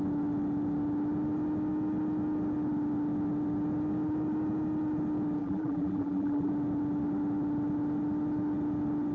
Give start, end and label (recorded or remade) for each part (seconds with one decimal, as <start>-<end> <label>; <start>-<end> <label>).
0.0-5.4 recorded; 5.4-6.5 remade; 6.5-9.1 recorded